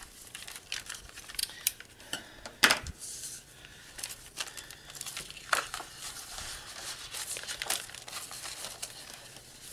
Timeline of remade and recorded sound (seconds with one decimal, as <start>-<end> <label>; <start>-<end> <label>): 0.0-1.4 recorded; 1.4-2.9 remade; 2.9-9.7 recorded